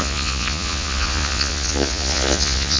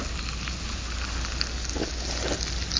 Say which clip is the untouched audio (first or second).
second